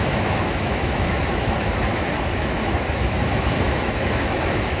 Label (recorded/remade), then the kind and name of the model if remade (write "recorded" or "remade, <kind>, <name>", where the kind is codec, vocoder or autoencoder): remade, autoencoder, DAC-VAE